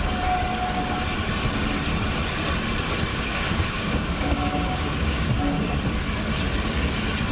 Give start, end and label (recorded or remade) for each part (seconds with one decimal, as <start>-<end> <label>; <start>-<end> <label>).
0.0-3.1 recorded; 3.1-5.3 remade; 5.3-7.3 recorded